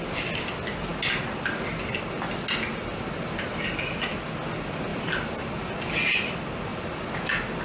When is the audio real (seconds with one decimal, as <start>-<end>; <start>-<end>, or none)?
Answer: 0.0-7.6